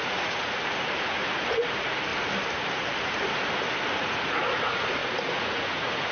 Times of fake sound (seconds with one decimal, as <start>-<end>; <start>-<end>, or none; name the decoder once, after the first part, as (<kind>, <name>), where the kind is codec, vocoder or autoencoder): 0.0-2.1 (vocoder, Vocos); 4.0-6.1